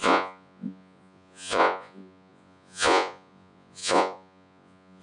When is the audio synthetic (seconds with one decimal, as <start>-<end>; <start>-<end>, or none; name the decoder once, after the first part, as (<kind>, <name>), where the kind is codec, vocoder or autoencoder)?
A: 0.0-5.0 (vocoder, Vocos)